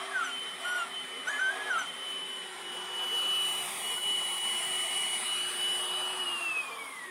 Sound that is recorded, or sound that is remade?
remade